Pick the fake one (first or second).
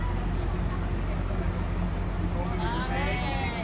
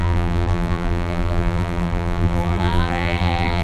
second